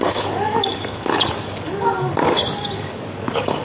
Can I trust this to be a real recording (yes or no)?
no